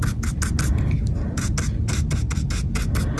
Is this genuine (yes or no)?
yes